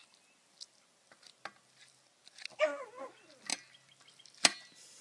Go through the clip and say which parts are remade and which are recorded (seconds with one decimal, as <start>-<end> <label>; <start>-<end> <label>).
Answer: 0.0-5.0 recorded